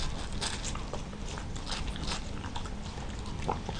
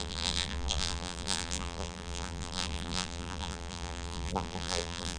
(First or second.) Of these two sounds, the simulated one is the second